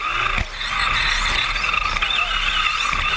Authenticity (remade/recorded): recorded